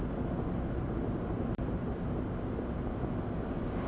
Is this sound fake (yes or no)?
no